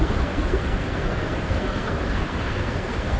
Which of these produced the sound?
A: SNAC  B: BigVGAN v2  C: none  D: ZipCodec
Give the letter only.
A